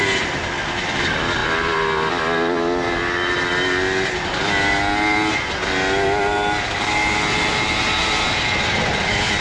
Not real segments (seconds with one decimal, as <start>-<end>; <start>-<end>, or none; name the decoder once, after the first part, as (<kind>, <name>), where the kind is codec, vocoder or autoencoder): none